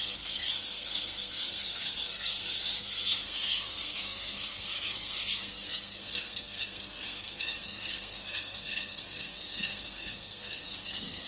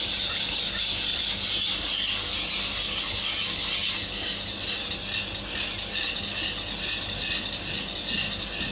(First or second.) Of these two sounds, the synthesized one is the first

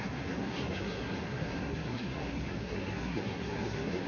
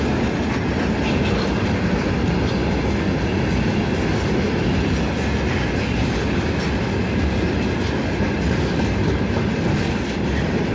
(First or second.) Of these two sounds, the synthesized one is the first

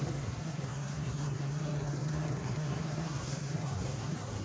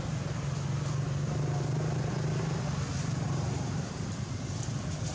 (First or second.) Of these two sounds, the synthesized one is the first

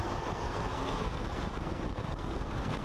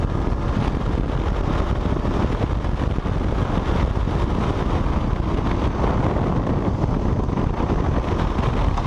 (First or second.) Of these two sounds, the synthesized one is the first